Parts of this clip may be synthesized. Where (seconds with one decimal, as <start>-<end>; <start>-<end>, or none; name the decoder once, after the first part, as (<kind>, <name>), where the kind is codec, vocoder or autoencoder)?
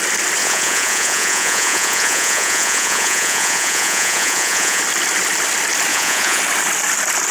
0.4-4.8 (vocoder, Vocos); 5.9-6.4